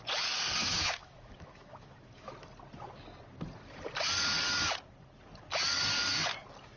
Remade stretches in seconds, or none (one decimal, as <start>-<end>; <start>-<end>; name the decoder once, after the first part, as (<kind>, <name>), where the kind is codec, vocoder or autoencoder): 0.6-2.3 (autoencoder, DAC-VAE)